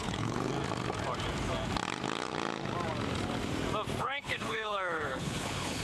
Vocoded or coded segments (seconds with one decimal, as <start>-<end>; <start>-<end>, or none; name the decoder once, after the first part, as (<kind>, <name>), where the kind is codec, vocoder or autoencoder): 0.0-0.5 (codec, HILCodec); 4.0-5.8